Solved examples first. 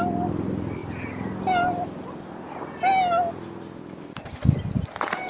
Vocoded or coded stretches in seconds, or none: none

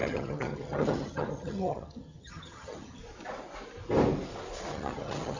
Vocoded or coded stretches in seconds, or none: 0.0-3.0 (vocoder, HiFi-GAN); 4.7-5.4

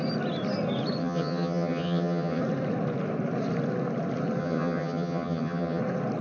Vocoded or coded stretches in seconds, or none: 1.0-2.4 (vocoder, HiFi-GAN); 4.4-5.8

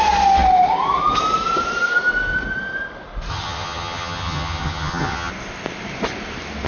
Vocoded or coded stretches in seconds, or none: 3.3-5.3 (vocoder, HiFi-GAN)

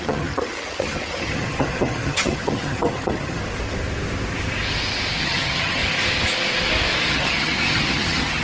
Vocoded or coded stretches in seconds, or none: 0.0-3.4 (vocoder, HiFi-GAN); 5.2-5.8; 7.1-8.4

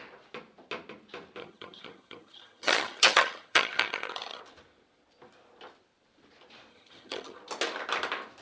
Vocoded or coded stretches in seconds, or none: 1.4-4.4 (vocoder, HiFi-GAN); 6.7-7.4

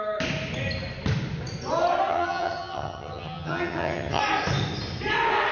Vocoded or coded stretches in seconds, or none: 2.1-4.2 (vocoder, HiFi-GAN)